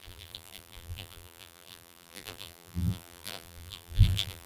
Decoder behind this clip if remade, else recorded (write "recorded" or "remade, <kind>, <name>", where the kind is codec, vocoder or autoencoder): remade, vocoder, BigVGAN v2